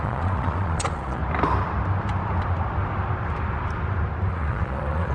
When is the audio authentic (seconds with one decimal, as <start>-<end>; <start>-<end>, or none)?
1.2-4.3